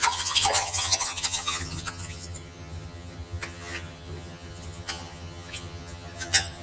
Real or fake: fake